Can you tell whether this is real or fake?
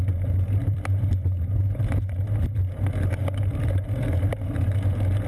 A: fake